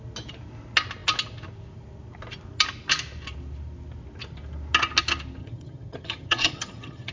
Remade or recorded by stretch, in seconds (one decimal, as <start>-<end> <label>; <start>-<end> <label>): 0.0-5.4 recorded; 5.4-7.1 remade